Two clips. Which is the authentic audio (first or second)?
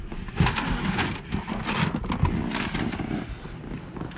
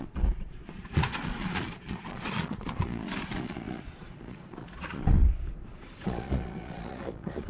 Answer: first